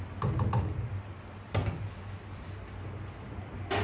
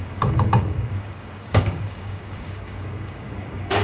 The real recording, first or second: first